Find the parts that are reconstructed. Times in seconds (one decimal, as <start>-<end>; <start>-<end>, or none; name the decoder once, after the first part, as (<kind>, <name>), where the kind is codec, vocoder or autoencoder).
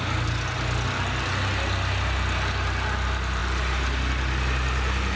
none